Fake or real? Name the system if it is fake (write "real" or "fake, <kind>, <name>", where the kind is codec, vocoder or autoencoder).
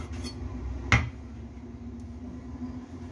real